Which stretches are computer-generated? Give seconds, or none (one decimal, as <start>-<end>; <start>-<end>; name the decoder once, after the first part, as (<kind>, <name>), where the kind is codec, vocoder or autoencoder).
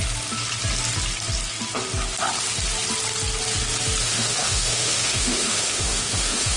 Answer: 4.0-6.6 (autoencoder, DAC-VAE)